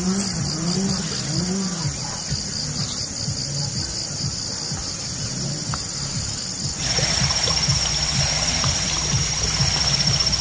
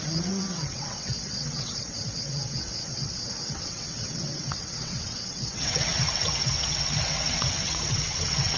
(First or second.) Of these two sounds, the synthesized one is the second